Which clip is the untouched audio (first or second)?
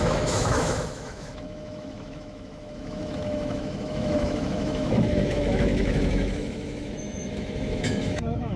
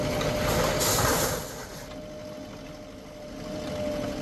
second